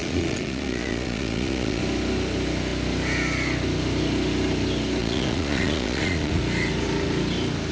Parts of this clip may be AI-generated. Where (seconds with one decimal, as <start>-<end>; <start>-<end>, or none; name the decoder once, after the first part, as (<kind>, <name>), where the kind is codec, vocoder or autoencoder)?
0.0-1.8 (vocoder, Vocos); 5.0-6.4